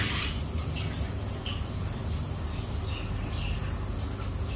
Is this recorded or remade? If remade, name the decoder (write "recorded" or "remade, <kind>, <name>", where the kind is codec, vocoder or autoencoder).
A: recorded